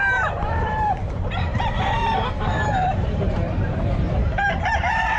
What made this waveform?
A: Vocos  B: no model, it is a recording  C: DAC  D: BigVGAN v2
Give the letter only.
D